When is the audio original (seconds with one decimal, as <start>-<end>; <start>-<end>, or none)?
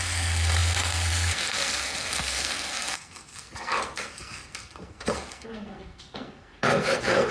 none